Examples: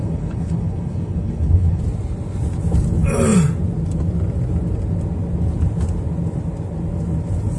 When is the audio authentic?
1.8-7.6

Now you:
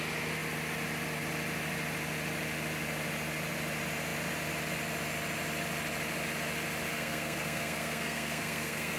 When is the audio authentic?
0.0-6.9

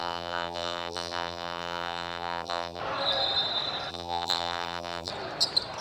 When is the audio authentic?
2.8-3.9; 5.1-5.8

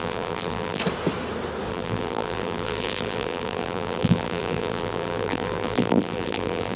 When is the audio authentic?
0.8-1.7

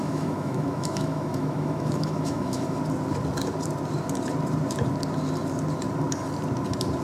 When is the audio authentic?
2.8-7.0